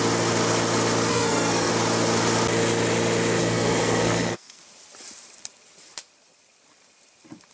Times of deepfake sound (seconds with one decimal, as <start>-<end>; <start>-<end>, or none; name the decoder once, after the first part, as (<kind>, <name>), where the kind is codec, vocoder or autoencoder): 1.1-1.7 (codec, SNAC); 3.4-4.6